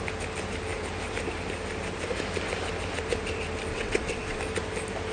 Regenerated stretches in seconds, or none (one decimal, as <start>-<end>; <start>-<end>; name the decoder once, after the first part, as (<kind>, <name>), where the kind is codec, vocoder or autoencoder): 3.7-4.4 (vocoder, WaveNeXt)